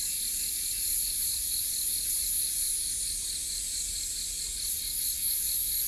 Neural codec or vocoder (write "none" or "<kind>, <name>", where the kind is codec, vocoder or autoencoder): none